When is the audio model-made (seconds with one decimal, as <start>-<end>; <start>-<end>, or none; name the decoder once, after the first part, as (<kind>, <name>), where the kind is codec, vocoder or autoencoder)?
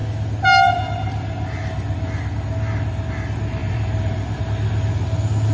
3.6-4.4 (vocoder, BigVGAN v2)